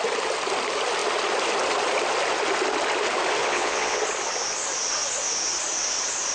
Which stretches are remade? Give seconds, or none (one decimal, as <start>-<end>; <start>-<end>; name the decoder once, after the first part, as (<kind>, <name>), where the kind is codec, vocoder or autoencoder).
3.4-4.0 (vocoder, WaveNeXt)